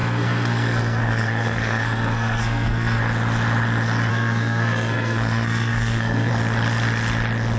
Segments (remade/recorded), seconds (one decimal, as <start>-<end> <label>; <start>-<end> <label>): 0.0-3.0 remade; 3.0-4.1 recorded; 4.1-6.3 remade; 6.3-7.6 recorded